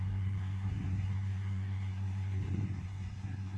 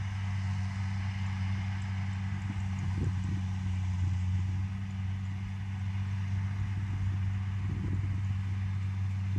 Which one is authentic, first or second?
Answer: second